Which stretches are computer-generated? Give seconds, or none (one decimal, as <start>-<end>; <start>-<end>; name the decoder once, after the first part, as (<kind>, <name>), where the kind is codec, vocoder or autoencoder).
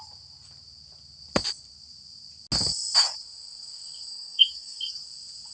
4.1-4.8 (codec, DAC)